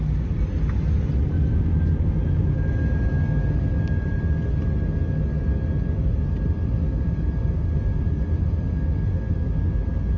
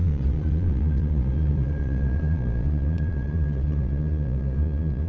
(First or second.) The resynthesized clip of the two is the second